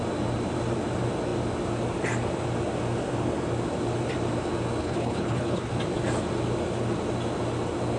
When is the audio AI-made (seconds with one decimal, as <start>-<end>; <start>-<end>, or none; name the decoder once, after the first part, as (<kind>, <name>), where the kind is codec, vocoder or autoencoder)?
4.8-5.7 (codec, HILCodec)